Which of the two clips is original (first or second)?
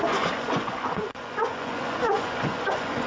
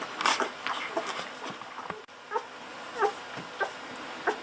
second